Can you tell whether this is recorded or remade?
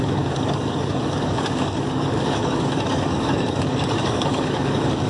remade